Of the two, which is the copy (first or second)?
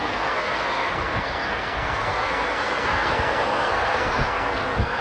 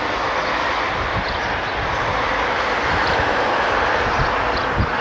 first